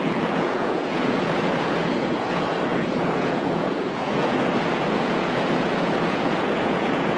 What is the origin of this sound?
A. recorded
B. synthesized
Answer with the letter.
B